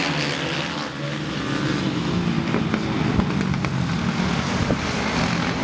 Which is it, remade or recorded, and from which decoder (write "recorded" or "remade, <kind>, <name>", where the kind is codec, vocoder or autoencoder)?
recorded